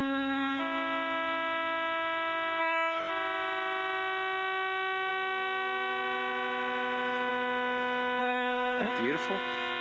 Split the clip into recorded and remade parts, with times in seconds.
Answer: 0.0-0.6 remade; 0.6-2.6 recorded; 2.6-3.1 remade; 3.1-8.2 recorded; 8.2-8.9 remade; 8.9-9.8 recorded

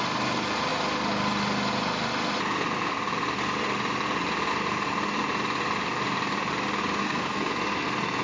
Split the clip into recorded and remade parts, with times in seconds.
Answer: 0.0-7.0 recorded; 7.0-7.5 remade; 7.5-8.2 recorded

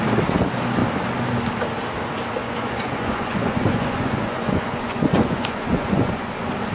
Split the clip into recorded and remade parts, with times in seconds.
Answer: 0.0-2.4 recorded; 2.4-6.3 remade; 6.3-6.7 recorded

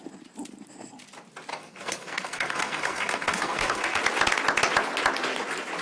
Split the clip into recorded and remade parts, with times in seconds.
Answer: 0.0-1.5 recorded; 1.5-4.0 remade; 4.0-5.8 recorded

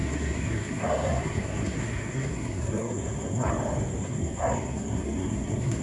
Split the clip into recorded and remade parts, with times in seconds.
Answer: 0.0-3.5 remade; 3.5-4.0 recorded; 4.0-5.8 remade